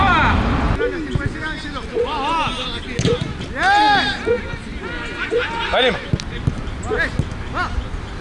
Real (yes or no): yes